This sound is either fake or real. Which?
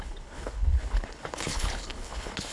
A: fake